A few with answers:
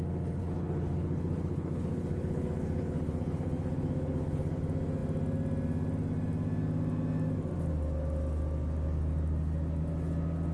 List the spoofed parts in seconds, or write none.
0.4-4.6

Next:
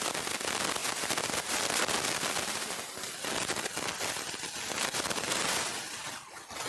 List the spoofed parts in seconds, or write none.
none

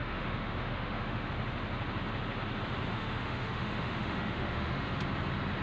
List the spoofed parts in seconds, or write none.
0.0-1.3; 2.9-5.0

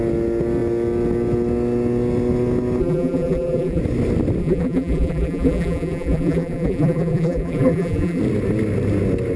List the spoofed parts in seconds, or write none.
2.8-3.8; 4.4-8.2